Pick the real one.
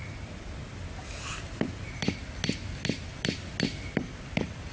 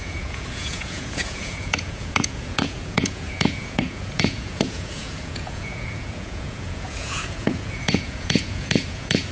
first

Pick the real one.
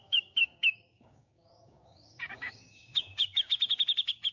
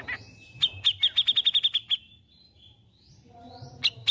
second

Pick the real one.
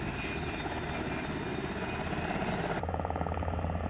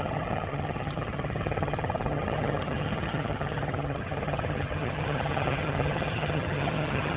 first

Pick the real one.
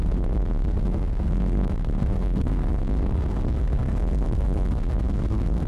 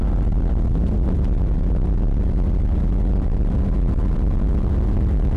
second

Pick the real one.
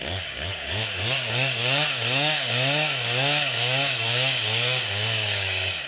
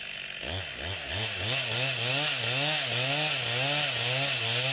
second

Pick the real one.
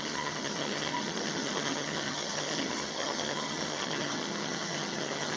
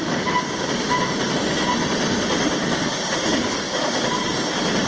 second